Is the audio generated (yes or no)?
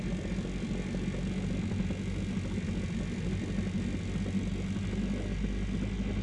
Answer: no